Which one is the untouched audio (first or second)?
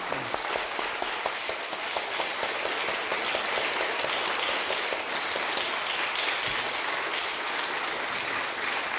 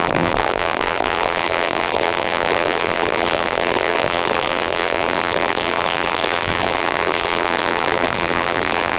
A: first